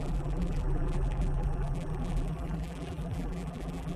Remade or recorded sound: remade